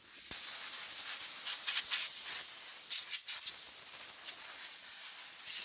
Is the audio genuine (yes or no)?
yes